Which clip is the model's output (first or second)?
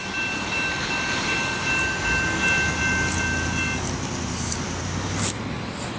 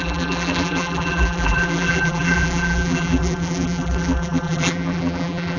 second